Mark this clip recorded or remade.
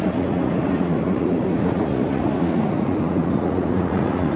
remade